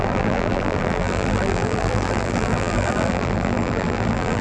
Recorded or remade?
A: remade